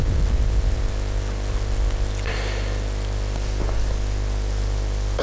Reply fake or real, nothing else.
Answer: real